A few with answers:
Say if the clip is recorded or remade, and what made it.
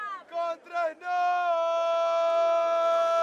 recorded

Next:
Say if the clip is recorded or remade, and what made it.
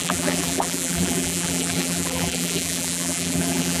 remade, vocoder, BigVGAN v2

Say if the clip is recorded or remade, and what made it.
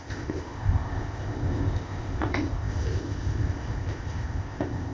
remade, codec, ZipCodec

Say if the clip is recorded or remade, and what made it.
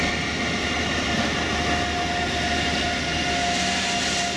recorded